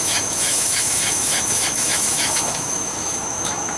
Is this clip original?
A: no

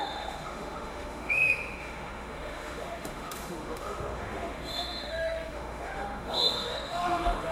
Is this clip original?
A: no